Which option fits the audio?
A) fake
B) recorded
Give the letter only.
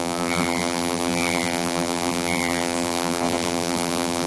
A